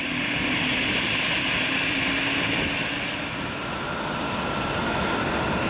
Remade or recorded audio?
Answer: recorded